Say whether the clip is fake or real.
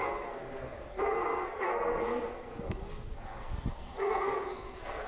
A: fake